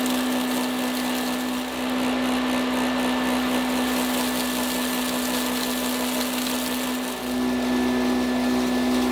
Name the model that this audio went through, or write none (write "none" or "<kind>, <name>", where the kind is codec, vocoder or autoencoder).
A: none